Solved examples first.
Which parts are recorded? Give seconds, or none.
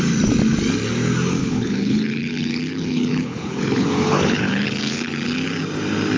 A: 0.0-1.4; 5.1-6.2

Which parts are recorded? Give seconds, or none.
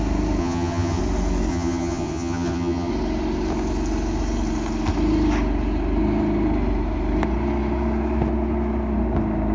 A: 0.0-0.4; 1.0-1.5; 2.9-9.5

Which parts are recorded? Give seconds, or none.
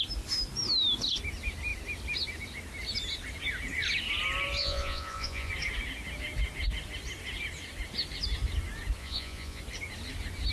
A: 0.0-4.6; 5.5-9.0; 9.6-10.5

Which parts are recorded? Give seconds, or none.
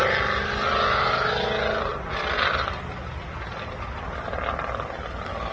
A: 0.0-1.9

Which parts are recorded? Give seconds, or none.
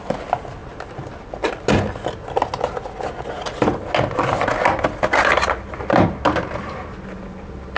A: 0.0-7.8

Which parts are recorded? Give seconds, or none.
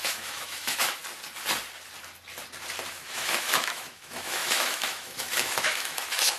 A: 1.0-2.9